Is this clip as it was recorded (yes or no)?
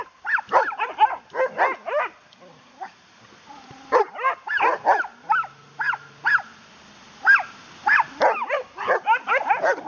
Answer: yes